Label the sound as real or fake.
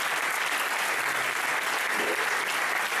real